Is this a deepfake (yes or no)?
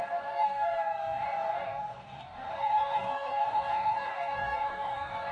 yes